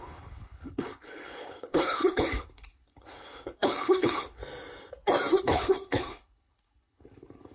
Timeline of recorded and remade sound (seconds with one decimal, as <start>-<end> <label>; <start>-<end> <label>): 0.0-4.4 remade; 4.4-5.4 recorded; 5.4-7.5 remade